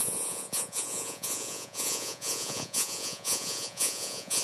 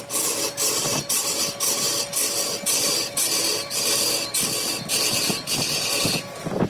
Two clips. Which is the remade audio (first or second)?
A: first